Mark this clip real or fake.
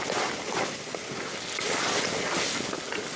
real